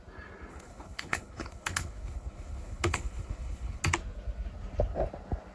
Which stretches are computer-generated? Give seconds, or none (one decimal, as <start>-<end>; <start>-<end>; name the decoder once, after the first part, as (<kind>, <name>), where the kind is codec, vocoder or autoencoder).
0.5-3.8 (codec, HILCodec)